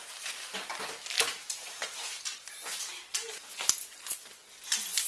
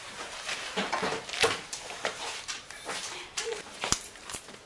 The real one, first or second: first